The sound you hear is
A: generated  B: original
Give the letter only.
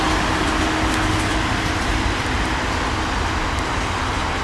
B